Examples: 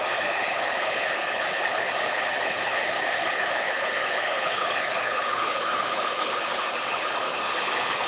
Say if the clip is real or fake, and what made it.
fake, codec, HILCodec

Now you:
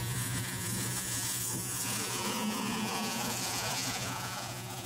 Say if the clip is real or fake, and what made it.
fake, vocoder, Vocos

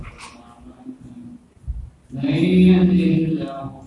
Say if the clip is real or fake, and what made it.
real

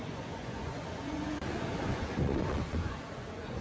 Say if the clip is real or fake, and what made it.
fake, vocoder, Vocos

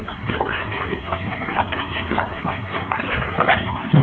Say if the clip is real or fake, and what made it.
fake, codec, SNAC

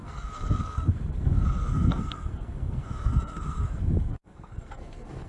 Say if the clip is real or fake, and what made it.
fake, codec, SNAC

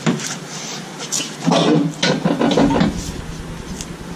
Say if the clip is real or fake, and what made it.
real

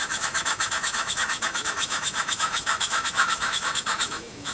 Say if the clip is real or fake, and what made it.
fake, autoencoder, DAC-VAE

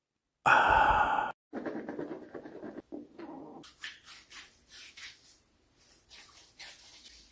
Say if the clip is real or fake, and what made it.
real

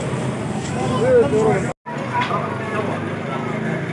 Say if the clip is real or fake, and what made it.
real